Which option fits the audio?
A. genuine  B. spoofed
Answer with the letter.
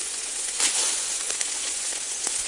B